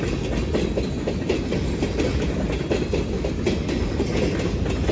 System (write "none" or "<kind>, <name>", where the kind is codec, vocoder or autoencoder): none